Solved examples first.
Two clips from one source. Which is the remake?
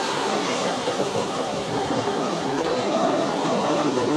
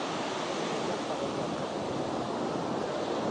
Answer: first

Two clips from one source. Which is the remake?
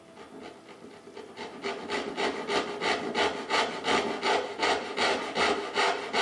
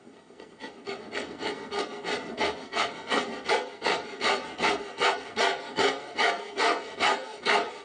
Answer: second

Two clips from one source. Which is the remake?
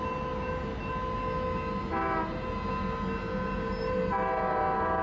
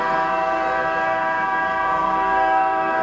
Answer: second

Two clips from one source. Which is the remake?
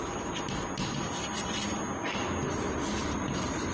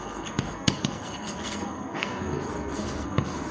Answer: second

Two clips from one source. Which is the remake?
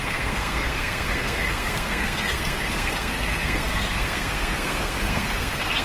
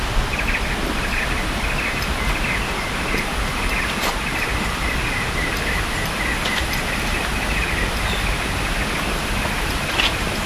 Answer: first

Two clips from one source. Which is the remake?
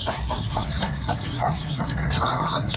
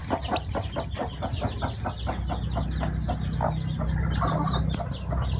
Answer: first